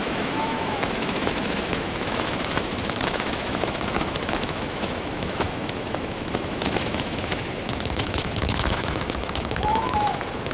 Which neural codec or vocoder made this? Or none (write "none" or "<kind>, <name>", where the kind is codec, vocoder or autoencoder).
autoencoder, DAC-VAE